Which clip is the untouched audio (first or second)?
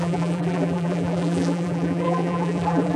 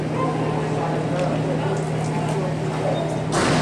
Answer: second